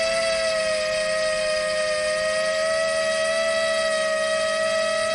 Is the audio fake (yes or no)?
no